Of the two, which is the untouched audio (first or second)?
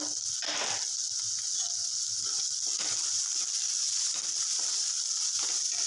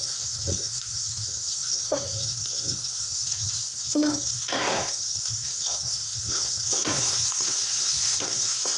first